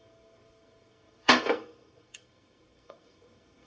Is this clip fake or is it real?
fake